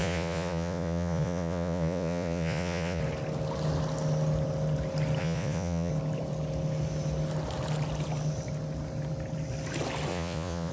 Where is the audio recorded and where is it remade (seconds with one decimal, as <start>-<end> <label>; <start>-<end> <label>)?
0.0-3.0 remade; 3.0-5.2 recorded; 5.2-5.9 remade; 5.9-10.1 recorded; 10.1-10.7 remade